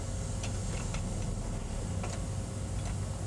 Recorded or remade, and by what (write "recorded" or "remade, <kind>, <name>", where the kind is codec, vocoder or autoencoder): recorded